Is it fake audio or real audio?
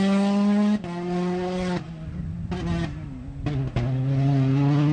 real